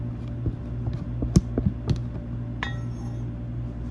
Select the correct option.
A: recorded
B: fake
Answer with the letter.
A